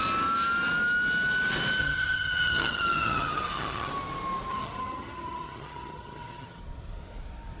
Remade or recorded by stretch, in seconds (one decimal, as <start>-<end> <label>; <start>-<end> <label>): 0.0-1.8 recorded; 1.8-3.9 remade; 3.9-4.5 recorded; 4.5-6.6 remade; 6.6-7.6 recorded